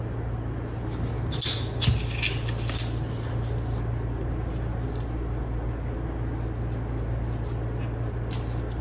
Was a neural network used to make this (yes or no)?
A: no